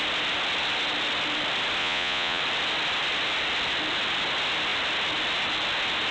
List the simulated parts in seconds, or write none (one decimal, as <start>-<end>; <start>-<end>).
1.8-2.4